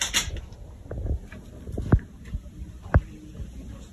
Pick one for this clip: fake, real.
real